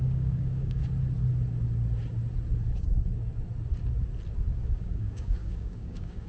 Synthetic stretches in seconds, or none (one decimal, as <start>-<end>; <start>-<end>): 0.0-0.8; 4.6-6.3